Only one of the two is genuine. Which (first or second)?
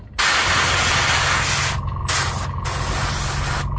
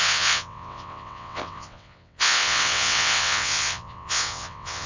first